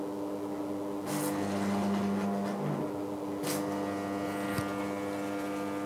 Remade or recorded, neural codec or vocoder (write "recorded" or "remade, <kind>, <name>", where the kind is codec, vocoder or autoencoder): recorded